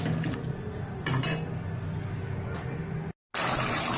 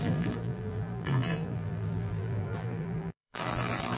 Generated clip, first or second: second